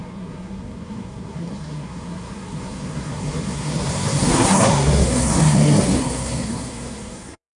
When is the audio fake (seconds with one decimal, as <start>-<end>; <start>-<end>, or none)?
0.0-7.6